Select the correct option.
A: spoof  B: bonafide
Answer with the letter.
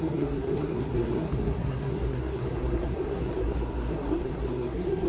A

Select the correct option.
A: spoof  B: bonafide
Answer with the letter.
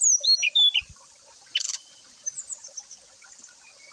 B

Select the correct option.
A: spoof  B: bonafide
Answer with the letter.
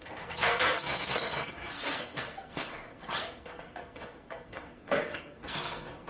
A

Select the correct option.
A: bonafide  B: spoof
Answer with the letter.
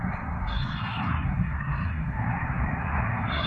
B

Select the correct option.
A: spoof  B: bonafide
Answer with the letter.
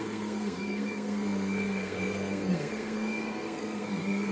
A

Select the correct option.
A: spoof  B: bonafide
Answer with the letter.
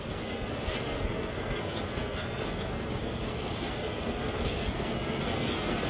A